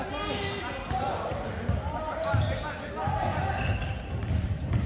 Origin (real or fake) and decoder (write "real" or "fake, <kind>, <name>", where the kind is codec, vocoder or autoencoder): real